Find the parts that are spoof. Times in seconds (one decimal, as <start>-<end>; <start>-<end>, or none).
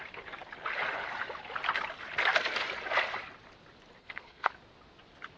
4.0-4.5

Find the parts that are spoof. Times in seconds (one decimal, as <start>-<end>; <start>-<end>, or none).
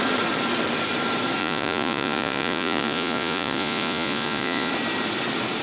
1.4-4.7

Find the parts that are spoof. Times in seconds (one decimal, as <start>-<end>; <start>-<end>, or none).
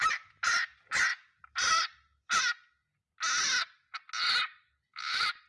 1.1-2.4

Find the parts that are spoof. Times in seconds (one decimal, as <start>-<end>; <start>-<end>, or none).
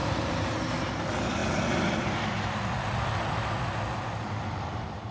none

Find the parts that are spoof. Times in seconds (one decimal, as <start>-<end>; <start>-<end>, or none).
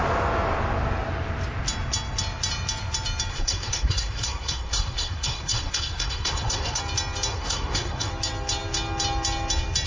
3.3-6.8; 7.3-8.1